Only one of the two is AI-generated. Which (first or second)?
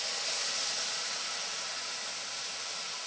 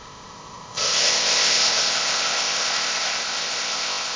second